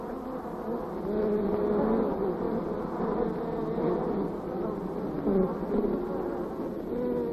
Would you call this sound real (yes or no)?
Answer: yes